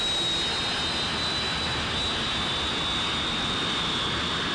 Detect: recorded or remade recorded